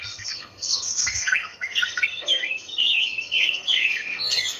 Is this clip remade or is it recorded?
remade